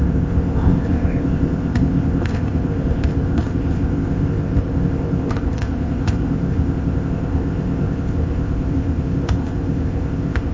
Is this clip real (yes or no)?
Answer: no